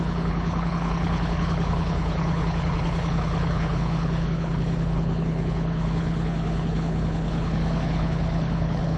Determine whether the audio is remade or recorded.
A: remade